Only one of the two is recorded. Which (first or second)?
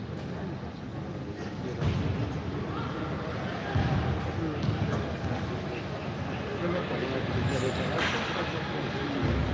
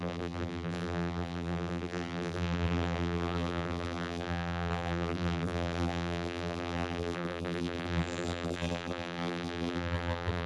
first